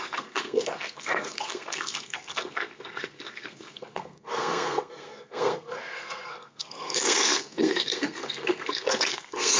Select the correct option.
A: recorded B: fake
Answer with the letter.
B